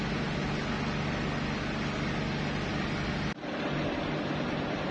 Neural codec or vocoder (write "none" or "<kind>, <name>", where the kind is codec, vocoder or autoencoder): none